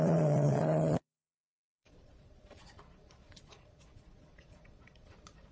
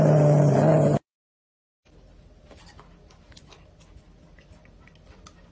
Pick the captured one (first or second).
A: second